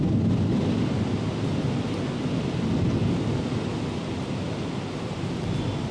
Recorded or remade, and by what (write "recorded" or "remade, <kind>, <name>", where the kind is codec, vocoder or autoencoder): recorded